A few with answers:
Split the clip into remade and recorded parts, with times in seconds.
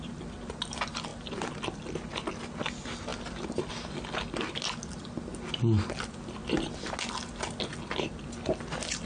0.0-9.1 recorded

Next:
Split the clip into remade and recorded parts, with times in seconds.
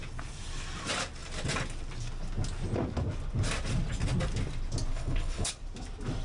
0.0-4.9 recorded; 4.9-5.5 remade; 5.5-6.2 recorded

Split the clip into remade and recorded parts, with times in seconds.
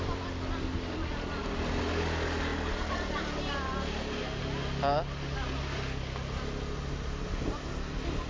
0.0-8.3 recorded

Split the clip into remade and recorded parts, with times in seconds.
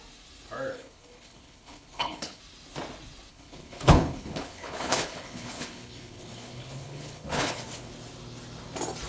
0.0-0.7 recorded; 0.7-2.4 remade; 2.4-3.3 recorded; 3.3-7.9 remade; 7.9-9.1 recorded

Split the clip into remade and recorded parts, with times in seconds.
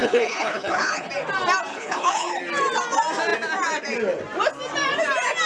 0.0-1.1 remade; 1.1-1.7 recorded; 1.7-2.4 remade; 2.4-5.5 recorded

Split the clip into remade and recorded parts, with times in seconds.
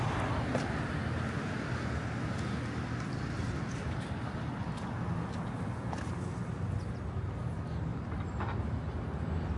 0.0-9.6 recorded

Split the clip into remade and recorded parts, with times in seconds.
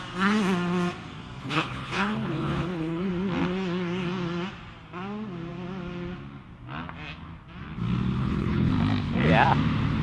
0.0-1.4 recorded; 1.4-3.1 remade; 3.1-8.2 recorded; 8.2-8.7 remade; 8.7-10.0 recorded